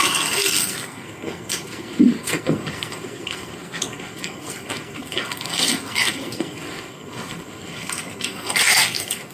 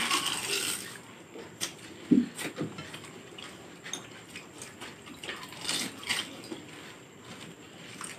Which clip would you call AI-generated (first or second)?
first